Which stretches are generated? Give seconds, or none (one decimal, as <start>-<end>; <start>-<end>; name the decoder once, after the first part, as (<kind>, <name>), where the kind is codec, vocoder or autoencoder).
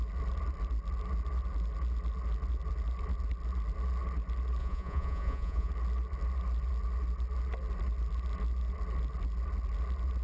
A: 4.6-5.7 (vocoder, Vocos)